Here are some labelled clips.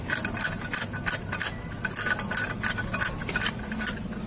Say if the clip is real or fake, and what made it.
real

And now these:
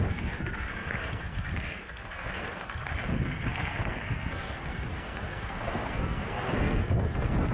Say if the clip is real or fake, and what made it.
fake, codec, SNAC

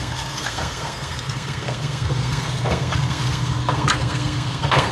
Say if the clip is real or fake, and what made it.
fake, codec, SNAC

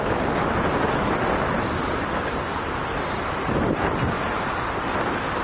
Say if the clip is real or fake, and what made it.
real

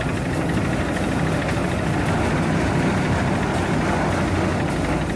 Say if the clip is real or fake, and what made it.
real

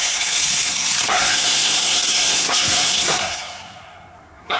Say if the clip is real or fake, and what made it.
fake, codec, SNAC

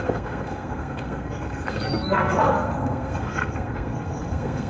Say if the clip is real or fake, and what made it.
fake, codec, SNAC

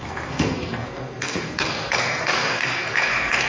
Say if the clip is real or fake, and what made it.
fake, codec, SNAC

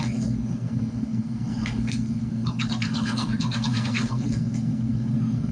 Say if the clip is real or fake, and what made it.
fake, codec, SNAC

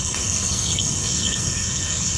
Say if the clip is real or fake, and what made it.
fake, codec, SNAC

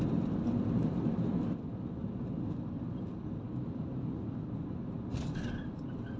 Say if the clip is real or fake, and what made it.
real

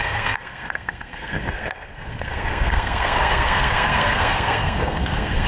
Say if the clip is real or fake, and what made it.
fake, codec, SNAC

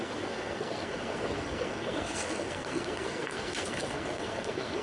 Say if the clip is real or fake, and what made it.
fake, codec, SNAC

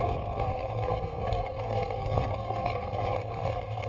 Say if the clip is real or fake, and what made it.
fake, codec, SNAC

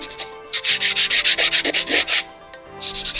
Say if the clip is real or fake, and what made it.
real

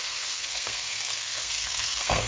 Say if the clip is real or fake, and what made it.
fake, codec, SNAC